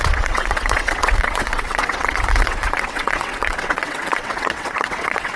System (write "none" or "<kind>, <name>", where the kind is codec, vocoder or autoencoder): vocoder, WaveNeXt